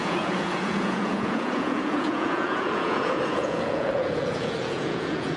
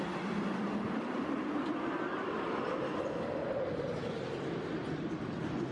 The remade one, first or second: first